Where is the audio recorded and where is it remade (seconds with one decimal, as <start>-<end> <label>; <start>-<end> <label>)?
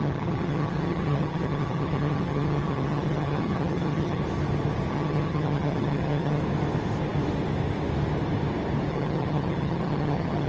0.0-4.2 remade; 4.2-4.9 recorded; 4.9-6.4 remade; 6.4-8.9 recorded; 8.9-10.5 remade